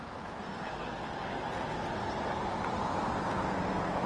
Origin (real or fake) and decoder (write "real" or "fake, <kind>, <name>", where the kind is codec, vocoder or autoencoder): real